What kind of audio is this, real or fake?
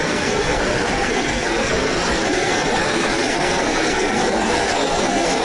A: fake